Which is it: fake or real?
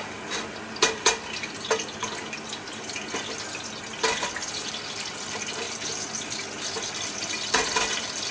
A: real